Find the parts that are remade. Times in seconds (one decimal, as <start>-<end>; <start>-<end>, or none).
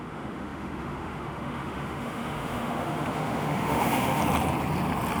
0.0-4.2